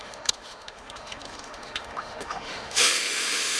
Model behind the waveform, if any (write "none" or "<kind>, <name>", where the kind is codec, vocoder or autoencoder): autoencoder, DAC-VAE